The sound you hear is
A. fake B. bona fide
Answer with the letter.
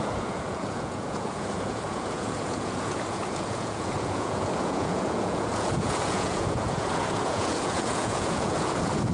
A